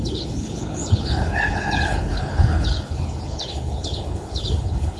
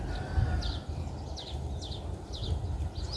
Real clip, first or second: second